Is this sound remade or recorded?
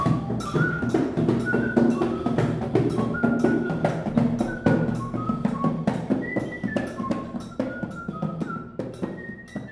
recorded